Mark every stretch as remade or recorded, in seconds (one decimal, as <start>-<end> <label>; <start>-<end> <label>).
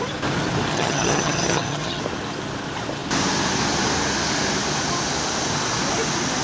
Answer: 0.0-0.7 recorded; 0.7-2.0 remade; 2.0-6.4 recorded